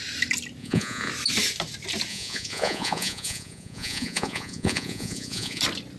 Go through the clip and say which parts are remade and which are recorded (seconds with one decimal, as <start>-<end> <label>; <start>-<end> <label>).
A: 0.0-0.6 recorded; 0.6-1.1 remade; 1.1-2.1 recorded; 2.1-5.6 remade; 5.6-6.0 recorded